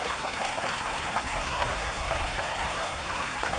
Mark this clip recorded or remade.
remade